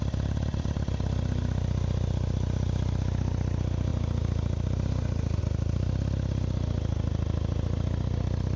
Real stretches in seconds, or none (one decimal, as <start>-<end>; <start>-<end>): 0.0-8.6